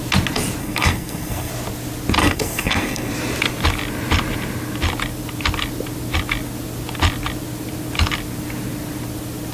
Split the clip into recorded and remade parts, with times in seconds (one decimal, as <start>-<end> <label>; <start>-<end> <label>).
0.0-0.6 recorded; 0.6-1.5 remade; 1.5-2.2 recorded; 2.2-3.1 remade; 3.1-9.5 recorded